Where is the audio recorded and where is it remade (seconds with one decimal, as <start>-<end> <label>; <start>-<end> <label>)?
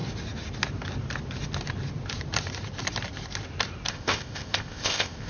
0.0-3.9 recorded; 3.9-5.3 remade